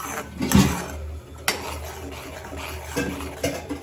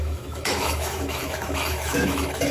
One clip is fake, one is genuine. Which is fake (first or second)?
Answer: second